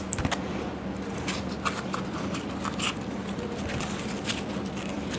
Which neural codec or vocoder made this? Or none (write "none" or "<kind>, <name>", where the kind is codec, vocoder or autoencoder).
none